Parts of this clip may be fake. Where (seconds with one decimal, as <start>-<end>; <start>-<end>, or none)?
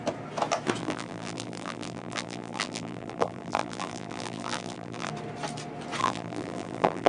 0.8-5.1; 6.0-7.1